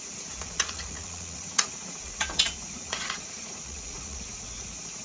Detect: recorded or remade remade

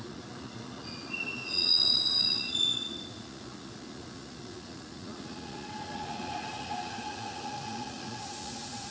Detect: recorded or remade remade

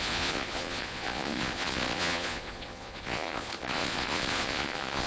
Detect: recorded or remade remade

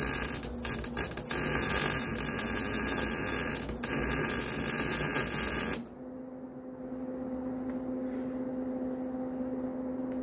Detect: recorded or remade recorded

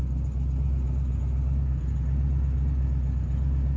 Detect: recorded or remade recorded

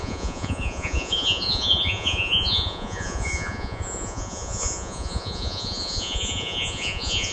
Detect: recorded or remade remade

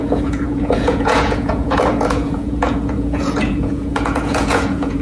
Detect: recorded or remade remade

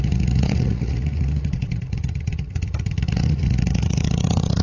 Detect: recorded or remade remade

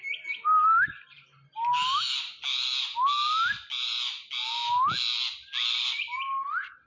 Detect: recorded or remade recorded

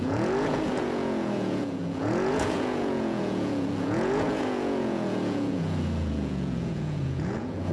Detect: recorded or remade remade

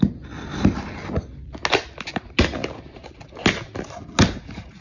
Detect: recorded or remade recorded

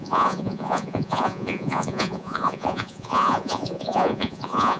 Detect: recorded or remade remade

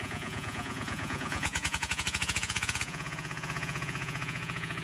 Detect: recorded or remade remade